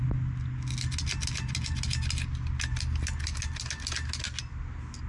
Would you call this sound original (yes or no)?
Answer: yes